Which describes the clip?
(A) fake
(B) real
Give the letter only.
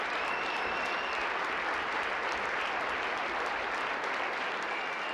B